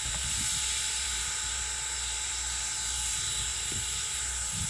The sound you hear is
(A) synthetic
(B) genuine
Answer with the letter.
A